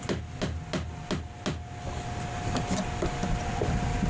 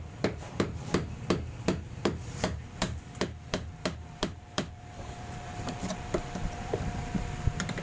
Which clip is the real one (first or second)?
first